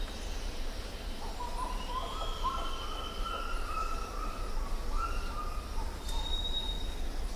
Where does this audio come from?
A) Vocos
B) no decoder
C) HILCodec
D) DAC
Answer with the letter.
B